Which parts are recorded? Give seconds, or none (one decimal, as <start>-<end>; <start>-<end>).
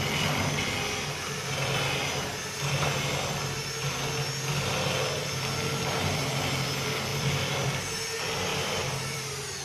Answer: 0.0-7.1; 7.8-8.5